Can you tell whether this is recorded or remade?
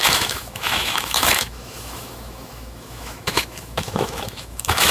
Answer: remade